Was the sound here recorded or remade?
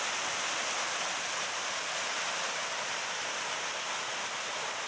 recorded